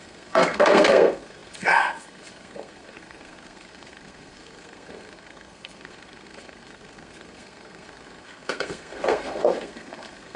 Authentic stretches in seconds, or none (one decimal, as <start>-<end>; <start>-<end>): none